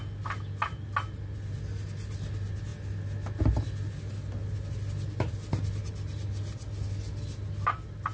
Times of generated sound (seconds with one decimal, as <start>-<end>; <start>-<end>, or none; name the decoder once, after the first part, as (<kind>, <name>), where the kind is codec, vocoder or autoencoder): none